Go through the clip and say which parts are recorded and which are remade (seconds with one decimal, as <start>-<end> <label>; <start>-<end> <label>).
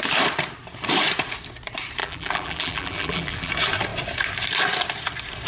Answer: 0.0-2.0 recorded; 2.0-3.5 remade; 3.5-5.5 recorded